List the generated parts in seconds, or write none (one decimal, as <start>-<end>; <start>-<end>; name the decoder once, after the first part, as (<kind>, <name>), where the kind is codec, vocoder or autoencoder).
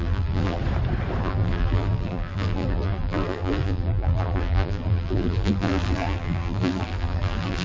0.0-0.6 (vocoder, BigVGAN v2); 1.2-7.6